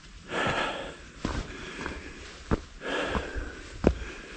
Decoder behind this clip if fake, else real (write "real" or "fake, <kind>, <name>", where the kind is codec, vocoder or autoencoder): real